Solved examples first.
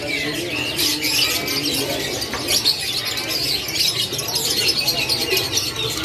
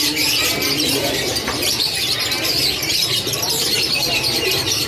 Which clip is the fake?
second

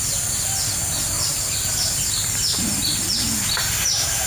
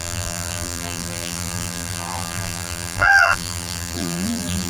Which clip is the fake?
second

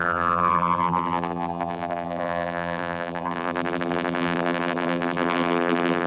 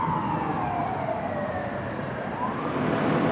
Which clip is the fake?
first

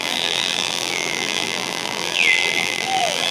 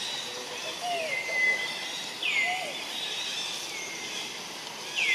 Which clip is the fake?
first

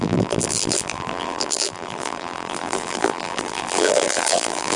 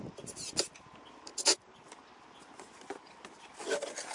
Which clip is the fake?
first